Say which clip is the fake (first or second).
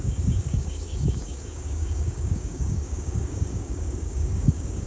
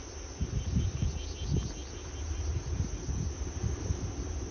first